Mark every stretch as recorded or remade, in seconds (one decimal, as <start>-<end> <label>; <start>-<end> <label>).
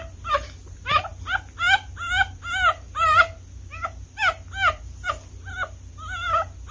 0.0-1.1 remade; 1.1-5.1 recorded; 5.1-6.7 remade